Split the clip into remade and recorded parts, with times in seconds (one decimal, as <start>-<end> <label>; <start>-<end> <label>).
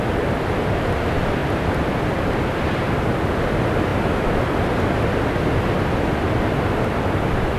0.0-7.6 recorded